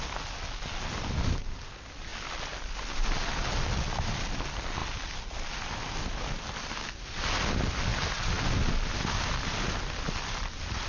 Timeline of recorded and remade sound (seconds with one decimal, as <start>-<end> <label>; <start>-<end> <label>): 0.0-10.9 recorded